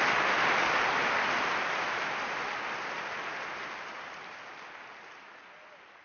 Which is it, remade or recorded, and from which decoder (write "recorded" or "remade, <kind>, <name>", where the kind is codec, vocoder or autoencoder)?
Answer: recorded